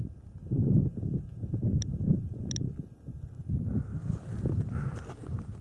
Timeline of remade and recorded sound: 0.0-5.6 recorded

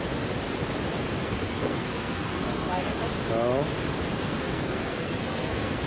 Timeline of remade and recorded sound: 0.0-1.2 recorded; 1.2-3.0 remade; 3.0-4.1 recorded; 4.1-5.9 remade

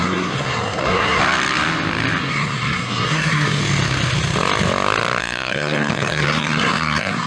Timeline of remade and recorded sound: 0.0-1.2 remade; 1.2-2.2 recorded; 2.2-3.6 remade; 3.6-5.2 recorded; 5.2-7.3 remade